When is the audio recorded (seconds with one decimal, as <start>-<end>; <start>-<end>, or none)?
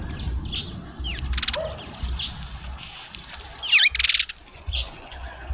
0.0-4.5